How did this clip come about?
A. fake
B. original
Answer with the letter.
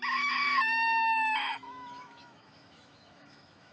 A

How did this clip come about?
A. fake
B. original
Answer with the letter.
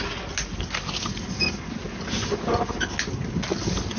B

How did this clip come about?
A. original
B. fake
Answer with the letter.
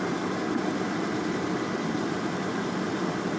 A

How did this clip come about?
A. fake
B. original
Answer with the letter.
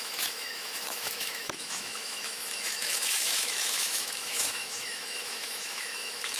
A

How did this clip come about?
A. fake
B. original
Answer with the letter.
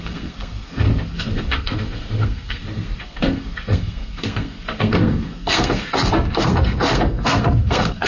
A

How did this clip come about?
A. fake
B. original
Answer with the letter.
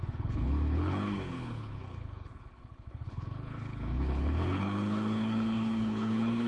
A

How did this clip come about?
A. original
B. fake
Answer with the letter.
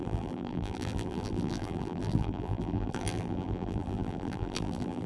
B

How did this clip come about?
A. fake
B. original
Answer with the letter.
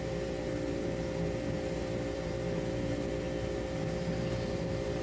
A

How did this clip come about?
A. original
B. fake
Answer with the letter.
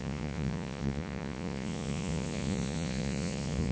B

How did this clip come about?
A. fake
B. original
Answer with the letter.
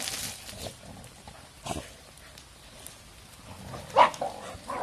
B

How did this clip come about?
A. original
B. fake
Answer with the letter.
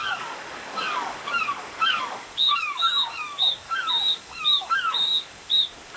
B